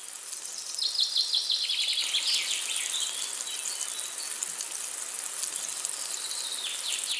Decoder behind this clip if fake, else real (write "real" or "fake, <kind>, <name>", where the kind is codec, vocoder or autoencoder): real